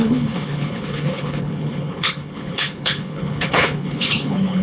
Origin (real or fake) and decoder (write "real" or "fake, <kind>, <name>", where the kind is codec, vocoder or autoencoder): fake, codec, HILCodec